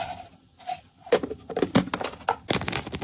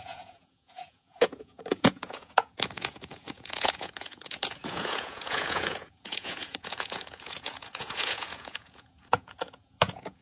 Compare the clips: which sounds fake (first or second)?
second